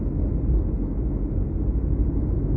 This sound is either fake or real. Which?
real